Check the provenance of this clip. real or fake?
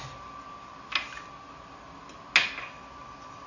real